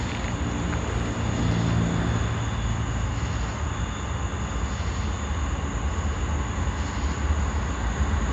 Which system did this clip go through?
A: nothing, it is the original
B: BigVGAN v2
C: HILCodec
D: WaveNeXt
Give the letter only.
A